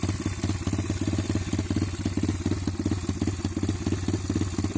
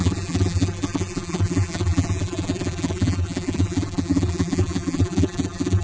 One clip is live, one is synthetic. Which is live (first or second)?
first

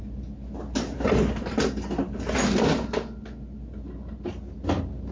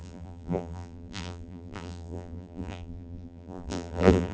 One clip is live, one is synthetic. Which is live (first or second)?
first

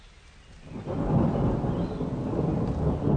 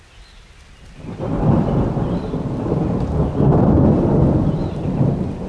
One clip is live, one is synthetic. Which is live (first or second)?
first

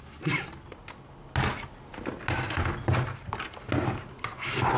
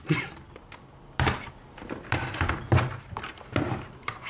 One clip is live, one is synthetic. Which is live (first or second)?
first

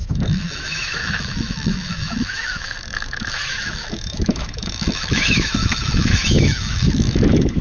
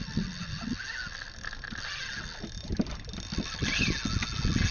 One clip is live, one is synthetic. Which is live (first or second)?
second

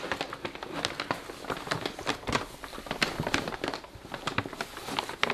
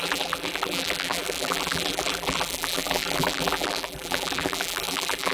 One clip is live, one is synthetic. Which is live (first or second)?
first